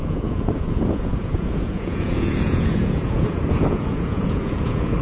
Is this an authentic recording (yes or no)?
no